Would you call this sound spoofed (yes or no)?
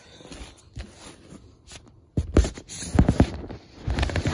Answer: no